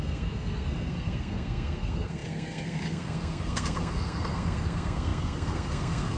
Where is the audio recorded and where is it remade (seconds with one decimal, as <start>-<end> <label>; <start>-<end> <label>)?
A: 0.0-6.2 remade